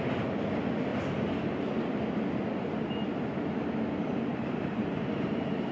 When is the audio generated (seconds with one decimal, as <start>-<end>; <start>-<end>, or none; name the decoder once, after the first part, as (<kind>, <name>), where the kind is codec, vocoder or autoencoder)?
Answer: 4.3-5.7 (vocoder, BigVGAN v2)